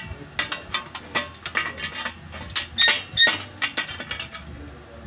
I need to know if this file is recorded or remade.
recorded